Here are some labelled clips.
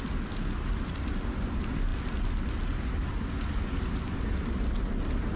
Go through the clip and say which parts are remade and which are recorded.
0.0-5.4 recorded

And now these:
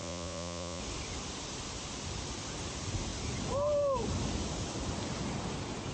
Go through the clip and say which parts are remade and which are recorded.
0.0-0.8 remade; 0.8-5.9 recorded

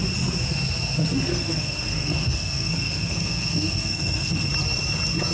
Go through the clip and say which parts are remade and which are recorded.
0.0-1.3 recorded; 1.3-4.5 remade; 4.5-5.3 recorded

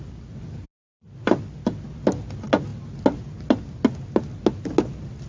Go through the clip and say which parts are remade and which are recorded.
0.0-5.3 recorded